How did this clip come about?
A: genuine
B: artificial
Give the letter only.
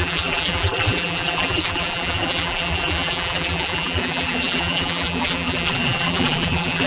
B